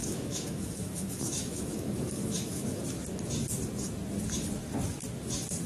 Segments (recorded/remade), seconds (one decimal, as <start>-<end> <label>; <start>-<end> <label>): 0.0-2.8 remade; 2.8-5.7 recorded